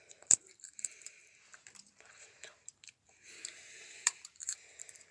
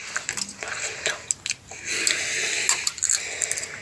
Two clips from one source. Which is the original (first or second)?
second